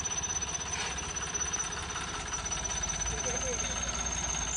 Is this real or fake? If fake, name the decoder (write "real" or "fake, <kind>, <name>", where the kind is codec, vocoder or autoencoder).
real